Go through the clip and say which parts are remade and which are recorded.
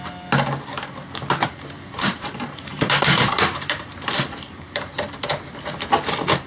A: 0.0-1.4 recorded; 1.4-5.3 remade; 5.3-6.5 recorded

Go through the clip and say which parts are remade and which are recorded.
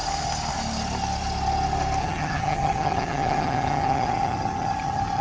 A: 0.0-2.0 recorded; 2.0-5.2 remade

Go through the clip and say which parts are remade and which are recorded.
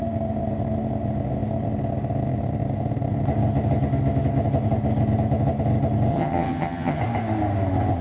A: 0.0-6.1 recorded; 6.1-7.0 remade; 7.0-8.0 recorded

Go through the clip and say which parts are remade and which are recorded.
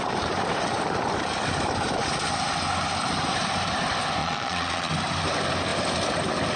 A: 0.0-4.2 recorded; 4.2-4.9 remade; 4.9-6.6 recorded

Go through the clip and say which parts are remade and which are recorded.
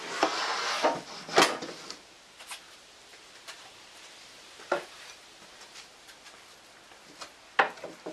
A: 0.0-3.1 recorded; 3.1-6.0 remade; 6.0-8.1 recorded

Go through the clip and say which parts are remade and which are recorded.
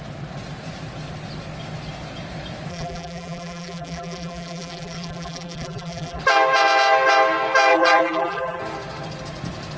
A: 0.0-2.7 recorded; 2.7-6.2 remade; 6.2-7.7 recorded; 7.7-8.6 remade; 8.6-9.8 recorded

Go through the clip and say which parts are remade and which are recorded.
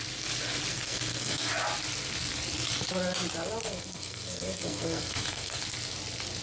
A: 0.0-0.7 recorded; 0.7-1.5 remade; 1.5-3.6 recorded; 3.6-5.6 remade; 5.6-6.4 recorded